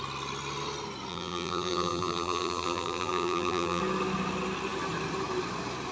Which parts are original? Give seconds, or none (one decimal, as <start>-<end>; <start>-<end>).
0.0-1.1; 3.8-5.9